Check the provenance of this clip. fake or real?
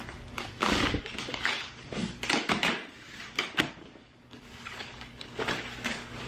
fake